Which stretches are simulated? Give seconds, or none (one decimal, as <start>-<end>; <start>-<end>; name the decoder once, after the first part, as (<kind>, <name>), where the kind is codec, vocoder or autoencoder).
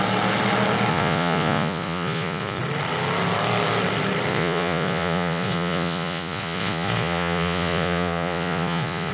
0.9-2.6 (vocoder, Vocos); 4.3-9.1